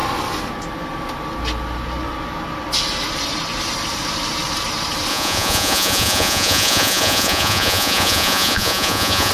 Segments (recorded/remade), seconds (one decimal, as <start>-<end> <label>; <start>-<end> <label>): 0.0-5.1 recorded; 5.1-9.3 remade